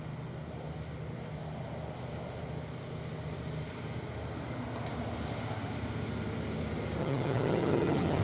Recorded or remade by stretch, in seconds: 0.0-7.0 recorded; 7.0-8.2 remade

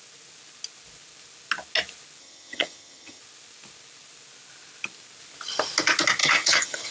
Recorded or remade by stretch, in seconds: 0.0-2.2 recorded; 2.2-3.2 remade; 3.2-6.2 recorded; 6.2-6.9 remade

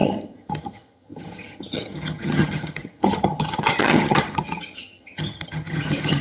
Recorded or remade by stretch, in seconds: 0.0-6.2 remade

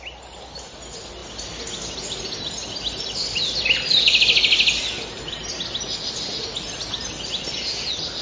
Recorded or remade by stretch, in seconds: 0.0-8.2 recorded

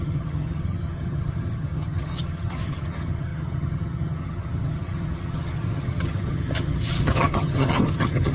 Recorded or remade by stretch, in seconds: 0.0-8.3 remade

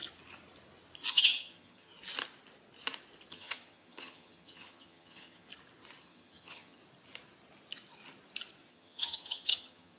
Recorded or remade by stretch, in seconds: 0.0-1.1 recorded; 1.1-1.9 remade; 1.9-3.3 recorded; 3.3-5.5 remade; 5.5-6.0 recorded; 6.0-6.8 remade; 6.8-8.7 recorded; 8.7-10.0 remade

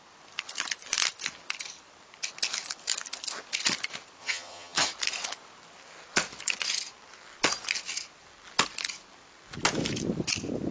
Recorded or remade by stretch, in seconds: 0.0-4.2 recorded; 4.2-4.9 remade; 4.9-10.7 recorded

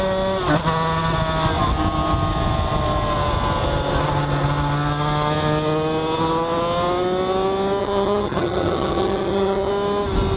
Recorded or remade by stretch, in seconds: 0.0-7.8 recorded; 7.8-9.7 remade; 9.7-10.4 recorded